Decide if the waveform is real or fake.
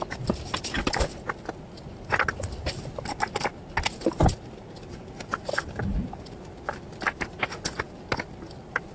real